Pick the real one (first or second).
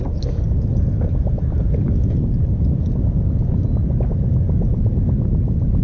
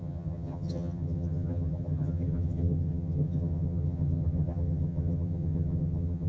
first